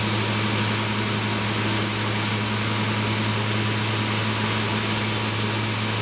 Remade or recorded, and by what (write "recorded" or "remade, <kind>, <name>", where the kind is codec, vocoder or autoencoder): recorded